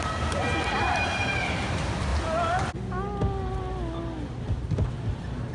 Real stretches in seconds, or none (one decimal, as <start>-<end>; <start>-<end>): 2.1-5.5